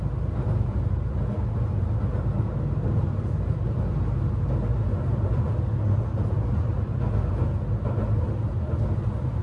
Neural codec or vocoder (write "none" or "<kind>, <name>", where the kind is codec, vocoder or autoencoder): none